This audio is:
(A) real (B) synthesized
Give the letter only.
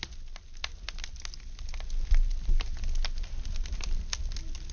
A